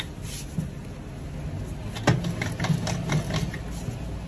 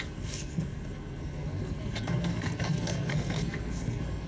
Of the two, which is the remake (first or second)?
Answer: second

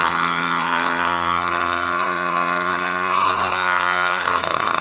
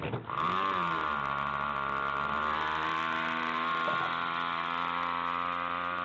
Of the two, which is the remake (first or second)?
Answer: first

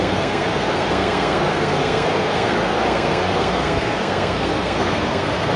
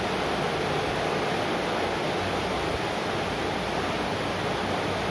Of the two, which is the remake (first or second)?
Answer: first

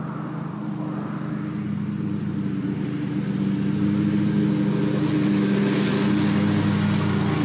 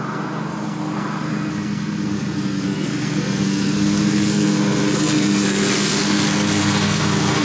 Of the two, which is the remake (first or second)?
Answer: second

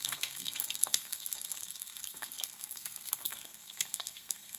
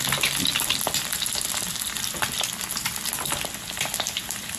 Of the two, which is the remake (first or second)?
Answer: first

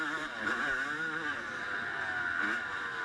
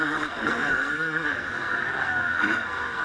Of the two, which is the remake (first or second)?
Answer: second